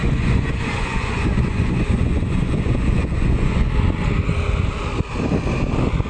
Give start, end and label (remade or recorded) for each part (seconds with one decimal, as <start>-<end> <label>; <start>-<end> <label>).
0.0-3.7 remade; 3.7-6.1 recorded